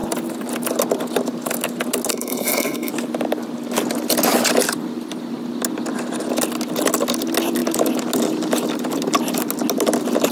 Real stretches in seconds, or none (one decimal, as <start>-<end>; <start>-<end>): 0.0-2.1; 2.9-10.3

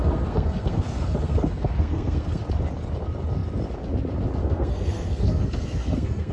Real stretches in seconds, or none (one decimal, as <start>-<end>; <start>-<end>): 2.4-4.4

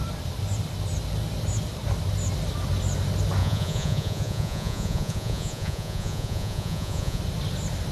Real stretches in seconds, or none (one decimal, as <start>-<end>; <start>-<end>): 0.0-3.4; 7.2-7.9